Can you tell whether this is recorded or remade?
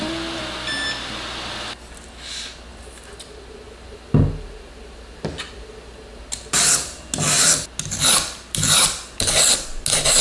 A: recorded